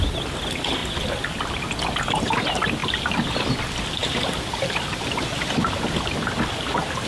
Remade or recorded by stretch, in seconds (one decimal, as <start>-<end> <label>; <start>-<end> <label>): 0.0-0.8 recorded; 0.8-1.6 remade; 1.6-2.8 recorded; 2.8-3.5 remade; 3.5-4.0 recorded; 4.0-7.1 remade